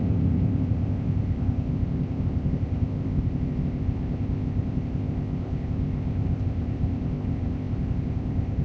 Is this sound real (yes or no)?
no